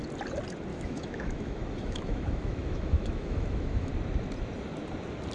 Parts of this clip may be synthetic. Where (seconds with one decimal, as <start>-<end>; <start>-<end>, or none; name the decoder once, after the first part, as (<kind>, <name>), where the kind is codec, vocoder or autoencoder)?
0.7-3.9 (autoencoder, DAC-VAE)